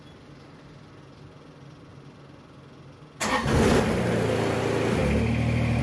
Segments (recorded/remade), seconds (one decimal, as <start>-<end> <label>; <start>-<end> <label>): 0.0-5.8 recorded